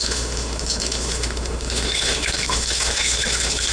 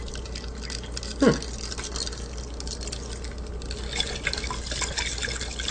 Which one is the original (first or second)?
second